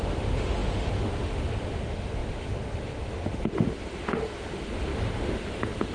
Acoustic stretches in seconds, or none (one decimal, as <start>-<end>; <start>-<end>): none